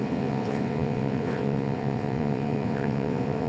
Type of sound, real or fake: fake